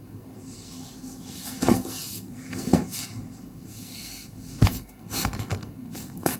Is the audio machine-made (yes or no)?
yes